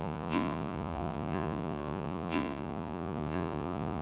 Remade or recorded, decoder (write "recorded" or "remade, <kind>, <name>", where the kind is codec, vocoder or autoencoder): remade, vocoder, Vocos